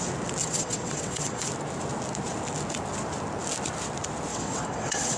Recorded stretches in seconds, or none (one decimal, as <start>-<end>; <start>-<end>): 0.0-0.4; 1.5-4.3